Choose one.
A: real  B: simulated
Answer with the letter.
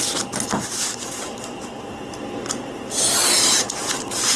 A